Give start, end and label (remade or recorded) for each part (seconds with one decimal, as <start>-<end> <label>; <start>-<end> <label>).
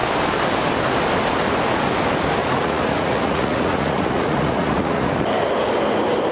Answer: 0.0-2.4 recorded; 2.4-5.1 remade; 5.1-6.3 recorded